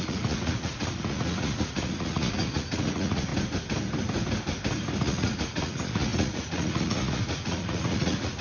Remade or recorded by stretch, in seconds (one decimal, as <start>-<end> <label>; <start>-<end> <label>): 0.0-3.3 remade; 3.3-5.0 recorded; 5.0-8.4 remade